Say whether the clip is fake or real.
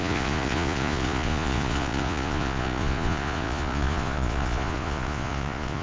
fake